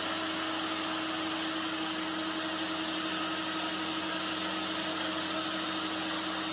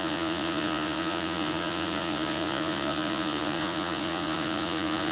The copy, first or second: second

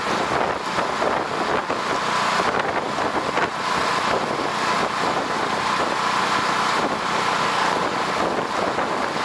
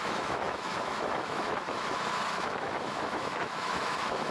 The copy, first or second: second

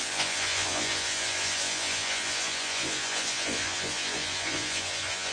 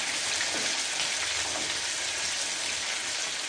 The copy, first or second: first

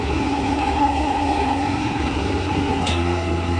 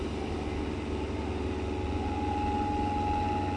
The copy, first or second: first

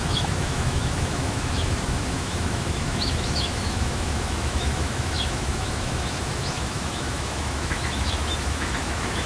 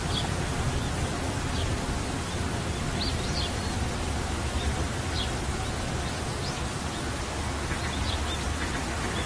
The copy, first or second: first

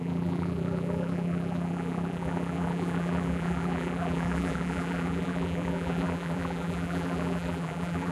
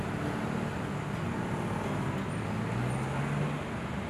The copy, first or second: first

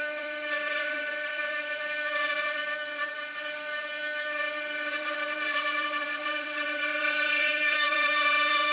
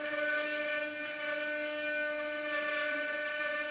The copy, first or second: first